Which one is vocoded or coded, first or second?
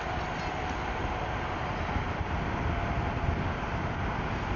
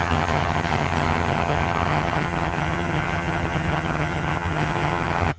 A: second